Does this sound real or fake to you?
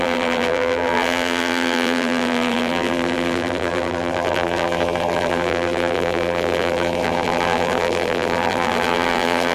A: fake